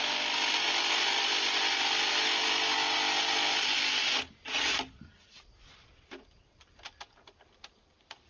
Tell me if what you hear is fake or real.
real